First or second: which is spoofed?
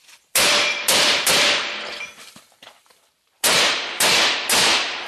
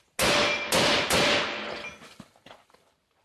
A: first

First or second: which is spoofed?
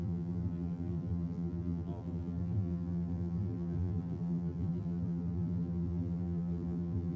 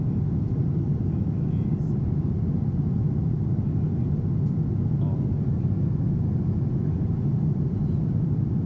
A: first